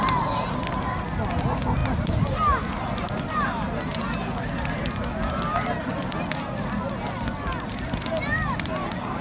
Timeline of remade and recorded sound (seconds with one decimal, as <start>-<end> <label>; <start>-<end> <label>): 0.0-9.2 recorded